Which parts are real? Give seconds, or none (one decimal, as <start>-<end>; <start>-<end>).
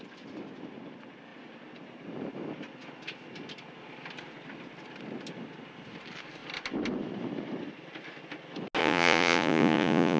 0.0-8.8